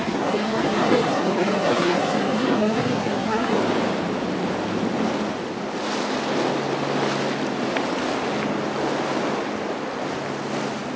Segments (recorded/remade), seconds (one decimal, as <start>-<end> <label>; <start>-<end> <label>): 0.0-3.6 remade; 3.6-11.0 recorded

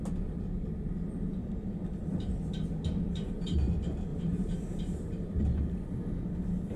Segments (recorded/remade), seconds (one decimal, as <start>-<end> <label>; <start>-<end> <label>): 0.0-1.4 recorded; 1.4-2.0 remade; 2.0-4.1 recorded; 4.1-5.4 remade; 5.4-6.8 recorded

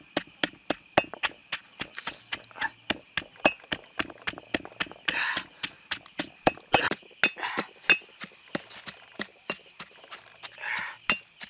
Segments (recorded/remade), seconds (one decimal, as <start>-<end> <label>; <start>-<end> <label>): 0.0-11.5 recorded

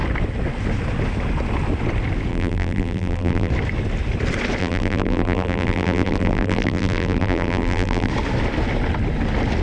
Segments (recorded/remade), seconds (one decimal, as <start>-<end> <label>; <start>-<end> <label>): 0.0-2.3 recorded; 2.3-3.5 remade; 3.5-4.6 recorded; 4.6-8.1 remade; 8.1-9.6 recorded